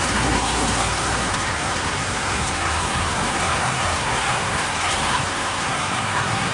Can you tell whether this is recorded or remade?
remade